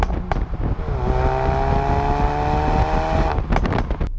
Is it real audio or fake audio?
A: real